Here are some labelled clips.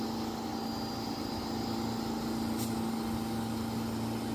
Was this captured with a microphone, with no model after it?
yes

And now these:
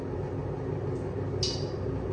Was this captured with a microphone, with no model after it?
yes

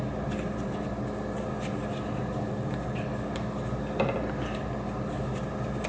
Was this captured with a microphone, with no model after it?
yes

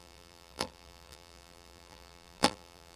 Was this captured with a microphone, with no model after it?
no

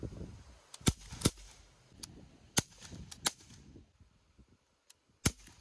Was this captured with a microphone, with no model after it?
yes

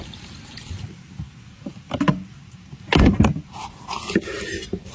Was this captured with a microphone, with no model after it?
yes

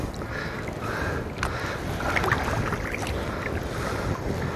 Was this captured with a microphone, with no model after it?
yes